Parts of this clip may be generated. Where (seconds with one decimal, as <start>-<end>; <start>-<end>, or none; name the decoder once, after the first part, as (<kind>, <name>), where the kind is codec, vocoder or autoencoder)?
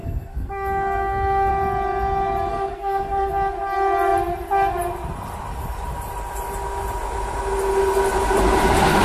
0.0-1.5 (codec, SNAC); 2.5-3.3